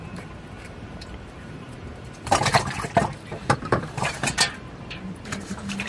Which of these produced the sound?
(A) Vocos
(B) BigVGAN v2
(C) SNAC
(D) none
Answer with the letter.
B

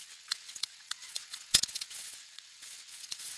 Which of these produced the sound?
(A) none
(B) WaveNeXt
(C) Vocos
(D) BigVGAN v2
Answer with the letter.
B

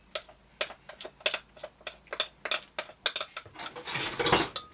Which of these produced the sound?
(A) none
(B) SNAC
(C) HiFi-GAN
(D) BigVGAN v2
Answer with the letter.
A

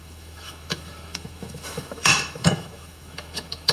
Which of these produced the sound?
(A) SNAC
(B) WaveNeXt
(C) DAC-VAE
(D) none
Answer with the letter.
C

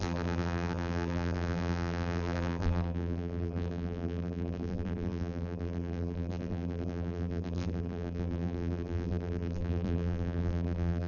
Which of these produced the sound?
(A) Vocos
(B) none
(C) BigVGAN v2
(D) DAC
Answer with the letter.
C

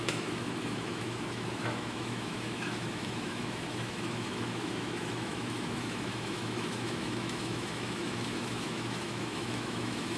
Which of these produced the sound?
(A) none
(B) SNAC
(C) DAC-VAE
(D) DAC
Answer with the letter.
C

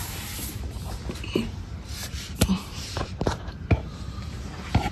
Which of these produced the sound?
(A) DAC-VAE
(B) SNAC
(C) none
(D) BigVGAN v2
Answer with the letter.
D